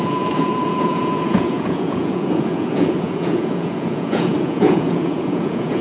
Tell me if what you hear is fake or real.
fake